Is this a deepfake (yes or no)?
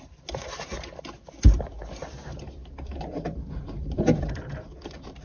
yes